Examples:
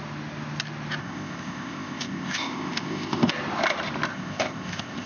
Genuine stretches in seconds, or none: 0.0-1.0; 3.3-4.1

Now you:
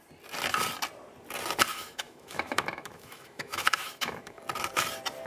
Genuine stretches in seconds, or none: 0.0-1.7; 4.4-5.3

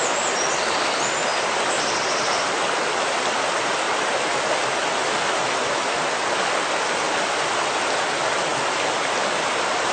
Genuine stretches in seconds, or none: 0.0-9.9

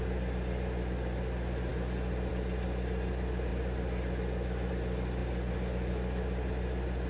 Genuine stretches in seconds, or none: 0.0-7.1

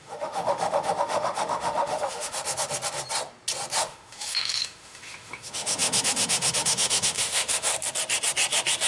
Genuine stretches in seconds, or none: 2.4-3.8; 7.7-8.9

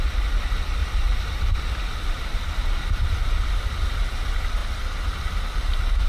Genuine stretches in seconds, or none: 0.0-6.1